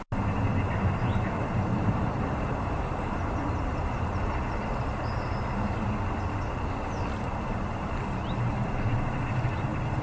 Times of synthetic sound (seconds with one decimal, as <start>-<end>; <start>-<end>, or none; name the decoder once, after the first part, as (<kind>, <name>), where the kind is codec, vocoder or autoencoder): 1.7-4.3 (vocoder, BigVGAN v2)